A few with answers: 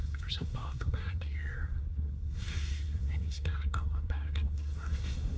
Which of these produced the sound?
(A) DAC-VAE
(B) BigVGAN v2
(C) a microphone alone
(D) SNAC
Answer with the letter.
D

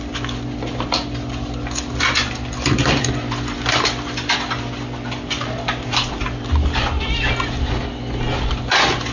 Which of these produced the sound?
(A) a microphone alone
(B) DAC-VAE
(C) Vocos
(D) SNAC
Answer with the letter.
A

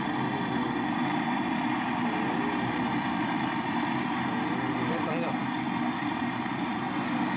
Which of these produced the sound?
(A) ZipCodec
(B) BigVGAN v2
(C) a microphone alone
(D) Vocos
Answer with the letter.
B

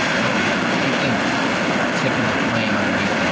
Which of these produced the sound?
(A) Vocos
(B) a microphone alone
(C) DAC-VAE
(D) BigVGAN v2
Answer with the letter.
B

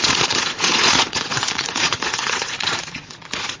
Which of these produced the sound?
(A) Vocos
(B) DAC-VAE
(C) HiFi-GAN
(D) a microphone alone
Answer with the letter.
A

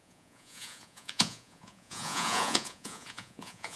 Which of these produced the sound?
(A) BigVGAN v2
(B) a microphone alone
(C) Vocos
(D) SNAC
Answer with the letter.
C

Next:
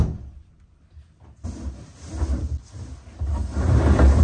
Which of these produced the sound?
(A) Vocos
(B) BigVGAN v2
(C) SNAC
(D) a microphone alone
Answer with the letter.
D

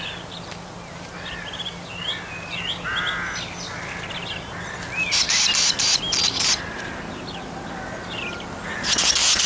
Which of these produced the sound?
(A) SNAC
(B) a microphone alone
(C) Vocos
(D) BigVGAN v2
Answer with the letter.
B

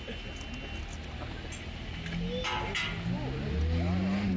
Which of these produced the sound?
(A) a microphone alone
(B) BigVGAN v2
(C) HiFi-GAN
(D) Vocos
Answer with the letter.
A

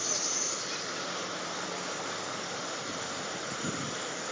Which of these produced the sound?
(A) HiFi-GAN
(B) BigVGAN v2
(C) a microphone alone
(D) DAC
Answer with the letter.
C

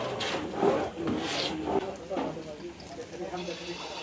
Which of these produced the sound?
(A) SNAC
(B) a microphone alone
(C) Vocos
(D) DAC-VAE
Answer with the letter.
B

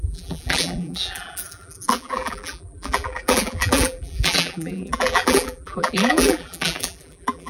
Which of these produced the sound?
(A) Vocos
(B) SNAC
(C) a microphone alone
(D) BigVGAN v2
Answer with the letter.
D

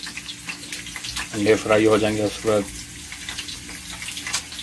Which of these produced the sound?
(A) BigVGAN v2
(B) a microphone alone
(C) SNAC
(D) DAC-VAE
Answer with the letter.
B